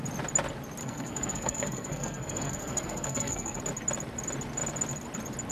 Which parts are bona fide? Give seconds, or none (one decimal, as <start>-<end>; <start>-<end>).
0.0-0.8; 3.6-5.5